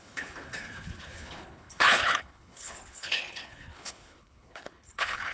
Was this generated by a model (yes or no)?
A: yes